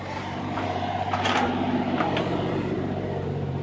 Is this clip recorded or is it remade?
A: remade